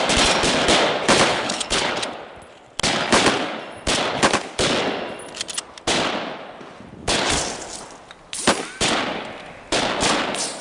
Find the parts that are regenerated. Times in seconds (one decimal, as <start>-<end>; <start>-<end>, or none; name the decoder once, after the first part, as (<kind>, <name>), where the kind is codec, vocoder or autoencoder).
1.3-1.9 (codec, HILCodec)